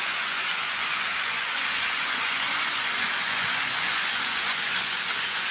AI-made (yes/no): yes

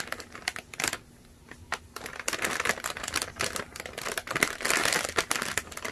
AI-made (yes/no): no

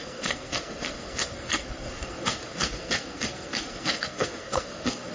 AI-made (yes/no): yes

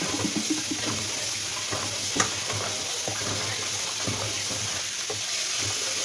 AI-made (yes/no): no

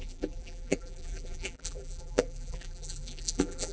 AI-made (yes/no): yes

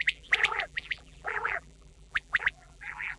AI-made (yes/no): yes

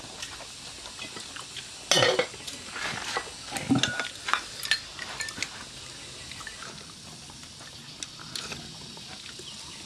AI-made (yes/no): no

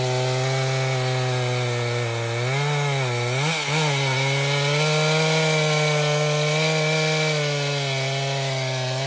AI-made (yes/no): no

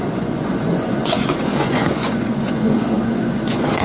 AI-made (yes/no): yes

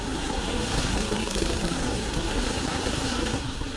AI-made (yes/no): yes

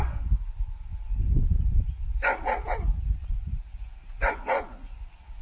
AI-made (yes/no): yes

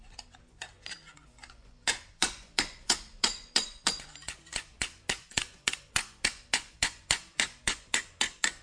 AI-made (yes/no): yes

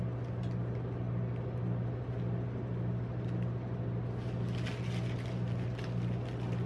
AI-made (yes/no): no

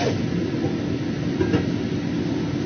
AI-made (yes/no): no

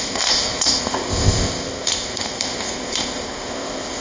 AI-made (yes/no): yes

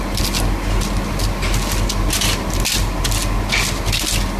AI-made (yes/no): no